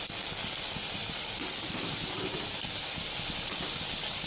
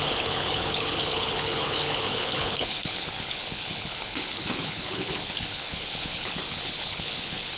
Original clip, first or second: first